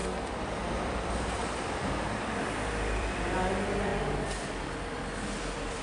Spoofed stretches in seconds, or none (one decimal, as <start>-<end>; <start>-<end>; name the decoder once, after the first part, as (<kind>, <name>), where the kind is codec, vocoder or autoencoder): 0.0-3.9 (vocoder, BigVGAN v2); 4.4-5.8